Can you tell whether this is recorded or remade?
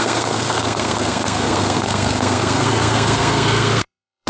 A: remade